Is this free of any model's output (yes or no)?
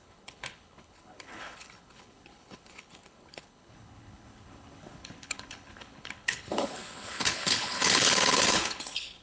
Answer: no